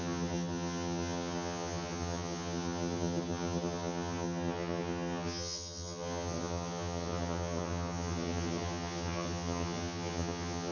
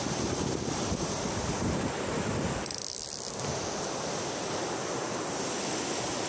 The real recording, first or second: second